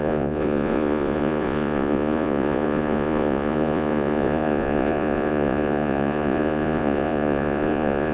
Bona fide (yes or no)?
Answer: no